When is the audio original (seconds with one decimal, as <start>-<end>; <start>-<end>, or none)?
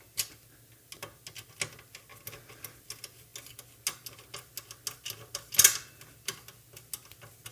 0.0-7.5